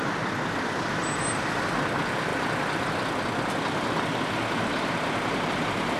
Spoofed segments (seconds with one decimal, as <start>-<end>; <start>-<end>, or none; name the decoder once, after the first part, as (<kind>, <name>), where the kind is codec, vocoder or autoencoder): 2.3-2.9 (vocoder, BigVGAN v2)